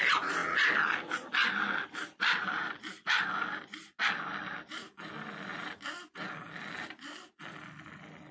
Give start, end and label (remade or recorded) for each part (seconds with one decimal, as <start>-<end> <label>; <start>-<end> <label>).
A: 0.0-8.3 recorded